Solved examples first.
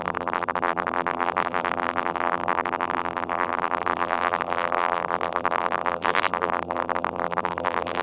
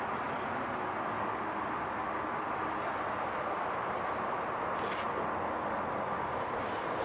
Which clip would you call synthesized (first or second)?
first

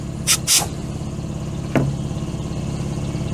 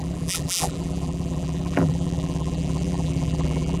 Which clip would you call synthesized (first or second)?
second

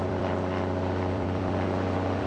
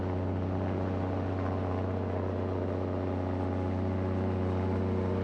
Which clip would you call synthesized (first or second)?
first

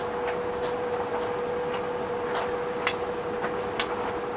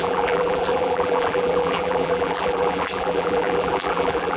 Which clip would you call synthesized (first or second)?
second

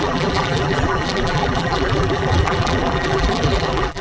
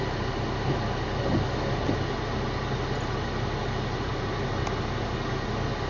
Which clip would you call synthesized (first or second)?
first